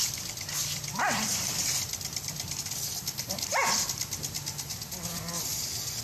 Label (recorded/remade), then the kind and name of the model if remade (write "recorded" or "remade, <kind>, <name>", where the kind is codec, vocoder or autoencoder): recorded